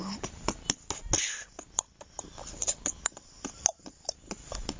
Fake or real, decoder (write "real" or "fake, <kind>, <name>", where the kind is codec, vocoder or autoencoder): real